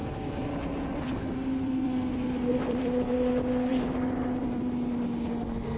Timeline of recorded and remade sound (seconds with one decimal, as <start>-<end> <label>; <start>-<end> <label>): 0.0-3.3 remade; 3.3-3.7 recorded; 3.7-5.0 remade; 5.0-5.8 recorded